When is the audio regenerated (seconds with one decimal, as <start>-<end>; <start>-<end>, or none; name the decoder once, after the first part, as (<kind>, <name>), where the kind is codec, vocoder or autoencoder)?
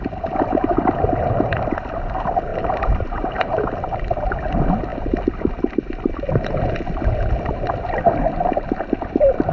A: 2.5-3.6 (vocoder, BigVGAN v2)